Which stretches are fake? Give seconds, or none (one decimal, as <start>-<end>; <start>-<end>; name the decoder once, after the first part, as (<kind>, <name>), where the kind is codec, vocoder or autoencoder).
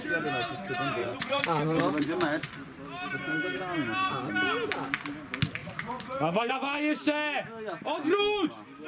1.0-1.8 (vocoder, Vocos); 5.6-6.5